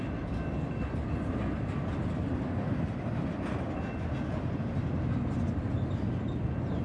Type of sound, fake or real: real